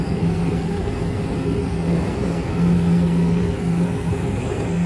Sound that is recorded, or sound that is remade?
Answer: remade